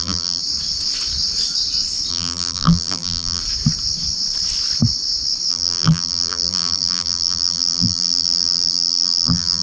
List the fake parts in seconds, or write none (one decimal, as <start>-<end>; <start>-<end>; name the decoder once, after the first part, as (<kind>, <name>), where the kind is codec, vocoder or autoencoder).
0.0-0.4 (vocoder, BigVGAN v2); 2.1-3.4; 5.5-9.6